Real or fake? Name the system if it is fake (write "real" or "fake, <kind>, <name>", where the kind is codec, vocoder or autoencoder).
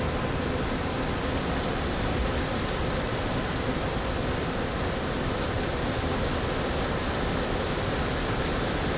real